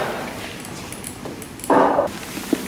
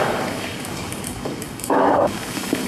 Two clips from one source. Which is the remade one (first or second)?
second